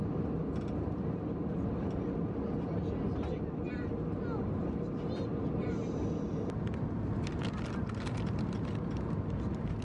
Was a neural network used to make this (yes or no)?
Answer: no